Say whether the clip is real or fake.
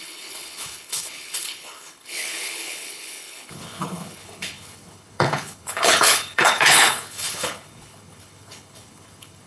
fake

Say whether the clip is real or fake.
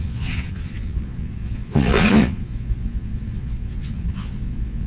fake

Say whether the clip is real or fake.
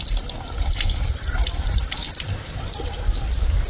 real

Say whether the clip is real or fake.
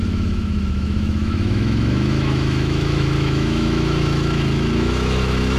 fake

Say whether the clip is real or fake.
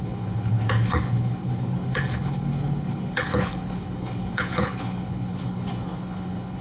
fake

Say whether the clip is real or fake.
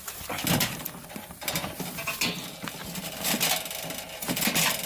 real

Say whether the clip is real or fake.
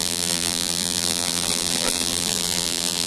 fake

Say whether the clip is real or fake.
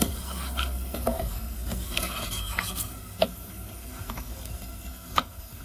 fake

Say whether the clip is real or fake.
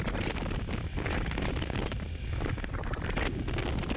real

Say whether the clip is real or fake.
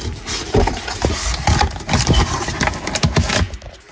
real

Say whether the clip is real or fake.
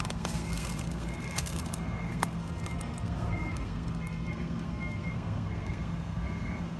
fake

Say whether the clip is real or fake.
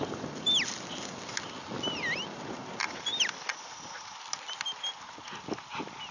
real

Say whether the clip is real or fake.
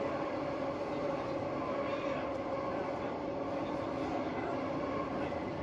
real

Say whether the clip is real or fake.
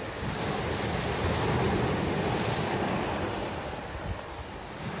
real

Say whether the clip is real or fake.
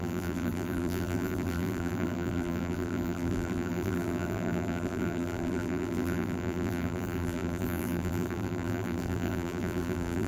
fake